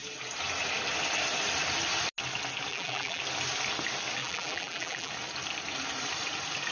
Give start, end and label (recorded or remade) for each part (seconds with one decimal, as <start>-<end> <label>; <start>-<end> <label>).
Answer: 0.0-2.7 recorded; 2.7-3.2 remade; 3.2-4.2 recorded; 4.2-5.1 remade; 5.1-6.7 recorded